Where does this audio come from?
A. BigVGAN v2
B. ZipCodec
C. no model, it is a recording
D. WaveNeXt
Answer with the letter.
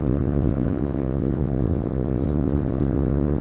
D